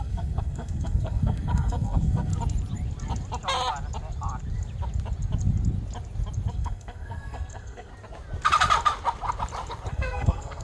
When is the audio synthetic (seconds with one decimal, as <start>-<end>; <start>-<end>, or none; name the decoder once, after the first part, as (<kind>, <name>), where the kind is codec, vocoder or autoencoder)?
0.0-2.3 (codec, SNAC); 6.5-7.9; 9.9-10.6